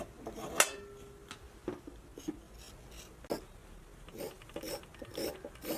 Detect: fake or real real